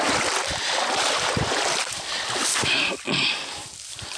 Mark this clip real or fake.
real